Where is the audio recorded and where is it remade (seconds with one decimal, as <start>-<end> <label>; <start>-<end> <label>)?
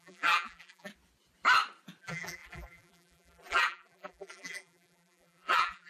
0.0-0.9 remade; 0.9-2.0 recorded; 2.0-5.9 remade